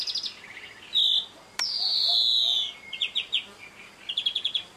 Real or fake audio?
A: real